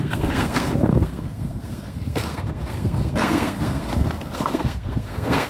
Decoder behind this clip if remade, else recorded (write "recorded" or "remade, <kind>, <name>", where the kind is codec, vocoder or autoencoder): remade, codec, SNAC